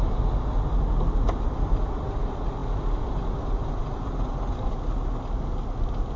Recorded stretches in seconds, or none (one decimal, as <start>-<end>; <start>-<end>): 0.0-6.2